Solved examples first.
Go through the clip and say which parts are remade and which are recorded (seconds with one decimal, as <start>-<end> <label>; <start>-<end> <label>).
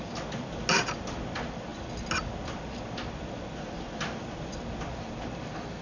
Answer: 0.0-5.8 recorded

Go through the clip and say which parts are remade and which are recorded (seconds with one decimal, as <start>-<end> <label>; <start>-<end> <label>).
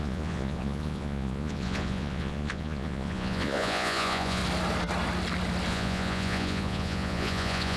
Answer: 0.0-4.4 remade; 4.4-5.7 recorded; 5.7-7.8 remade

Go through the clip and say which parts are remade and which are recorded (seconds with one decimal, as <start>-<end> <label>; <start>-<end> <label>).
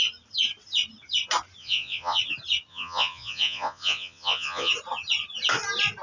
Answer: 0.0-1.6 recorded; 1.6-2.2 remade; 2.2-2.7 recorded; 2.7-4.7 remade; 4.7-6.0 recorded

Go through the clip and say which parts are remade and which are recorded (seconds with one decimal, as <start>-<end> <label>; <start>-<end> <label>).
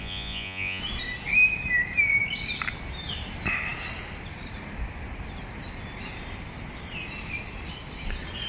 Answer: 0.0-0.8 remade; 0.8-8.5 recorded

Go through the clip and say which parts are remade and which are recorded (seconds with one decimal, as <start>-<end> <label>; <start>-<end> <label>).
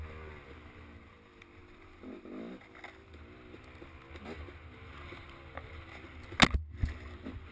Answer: 0.0-7.5 recorded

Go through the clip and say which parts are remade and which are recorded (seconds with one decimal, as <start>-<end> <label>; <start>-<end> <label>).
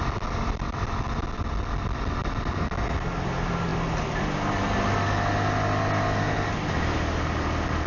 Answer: 0.0-7.9 recorded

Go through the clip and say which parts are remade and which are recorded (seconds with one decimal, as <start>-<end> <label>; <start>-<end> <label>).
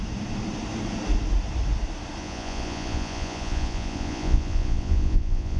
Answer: 0.0-2.2 recorded; 2.2-5.6 remade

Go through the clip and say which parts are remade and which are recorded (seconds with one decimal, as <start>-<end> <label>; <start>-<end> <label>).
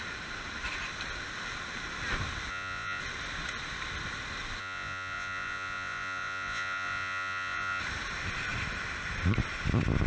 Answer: 0.0-2.5 recorded; 2.5-3.0 remade; 3.0-4.6 recorded; 4.6-7.8 remade; 7.8-10.1 recorded